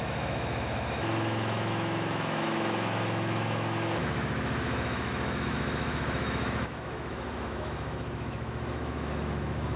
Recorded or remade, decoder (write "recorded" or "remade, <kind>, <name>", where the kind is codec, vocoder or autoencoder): remade, autoencoder, DAC-VAE